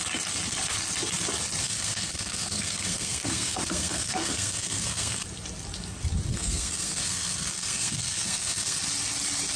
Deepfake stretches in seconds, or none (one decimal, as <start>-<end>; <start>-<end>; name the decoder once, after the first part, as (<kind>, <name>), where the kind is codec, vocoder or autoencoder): 1.6-5.2 (codec, SNAC); 6.3-8.8